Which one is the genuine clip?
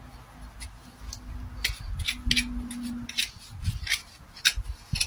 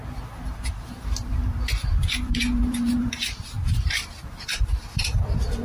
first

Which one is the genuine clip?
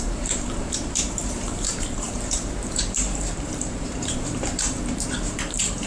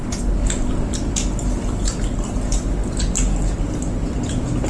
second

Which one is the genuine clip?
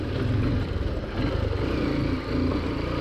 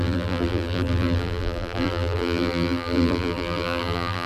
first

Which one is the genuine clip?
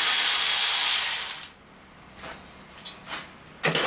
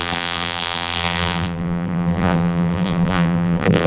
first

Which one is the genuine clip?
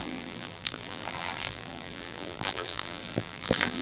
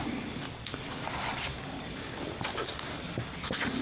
second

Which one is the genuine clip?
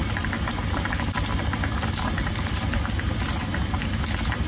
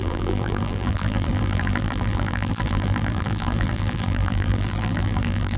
first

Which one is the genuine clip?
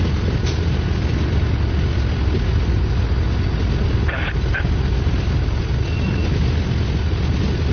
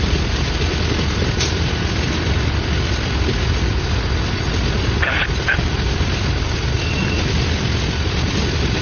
first